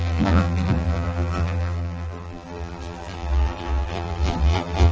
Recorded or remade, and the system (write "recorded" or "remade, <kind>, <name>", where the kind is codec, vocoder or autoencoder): remade, vocoder, BigVGAN v2